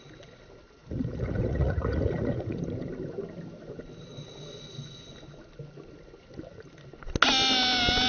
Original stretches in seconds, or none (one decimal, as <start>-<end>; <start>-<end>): 0.0-0.8; 2.6-8.1